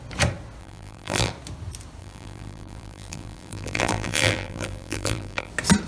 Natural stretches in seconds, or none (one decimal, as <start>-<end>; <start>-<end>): 0.0-0.6; 1.3-2.0; 5.5-5.9